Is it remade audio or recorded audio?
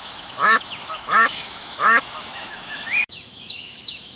remade